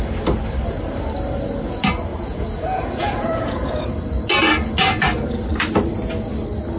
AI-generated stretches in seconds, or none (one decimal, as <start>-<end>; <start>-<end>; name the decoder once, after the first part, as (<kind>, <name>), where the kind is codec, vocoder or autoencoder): 2.1-3.9 (vocoder, Vocos)